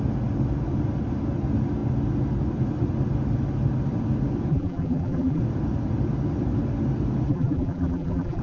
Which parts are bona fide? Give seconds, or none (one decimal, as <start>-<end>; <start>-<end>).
0.0-4.5; 5.4-7.3